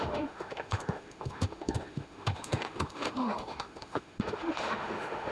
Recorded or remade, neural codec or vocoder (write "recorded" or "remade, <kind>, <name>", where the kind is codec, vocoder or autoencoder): remade, autoencoder, DAC-VAE